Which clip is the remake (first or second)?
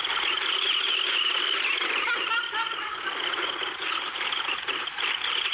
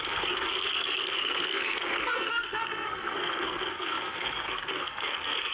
second